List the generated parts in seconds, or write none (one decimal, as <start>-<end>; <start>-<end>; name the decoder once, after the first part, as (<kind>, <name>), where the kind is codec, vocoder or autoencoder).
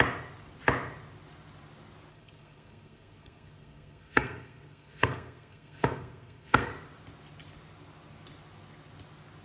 2.1-6.7 (codec, SNAC)